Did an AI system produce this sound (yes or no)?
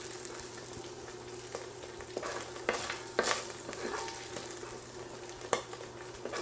no